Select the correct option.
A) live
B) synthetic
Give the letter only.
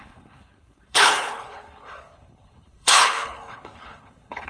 B